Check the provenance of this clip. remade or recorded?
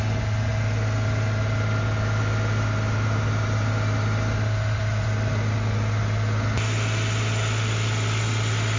recorded